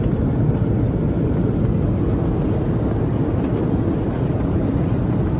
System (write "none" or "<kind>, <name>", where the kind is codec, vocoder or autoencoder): none